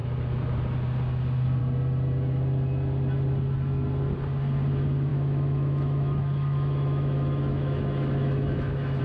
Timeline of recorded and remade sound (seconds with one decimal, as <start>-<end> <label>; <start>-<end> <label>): 0.0-5.1 recorded; 5.1-9.0 remade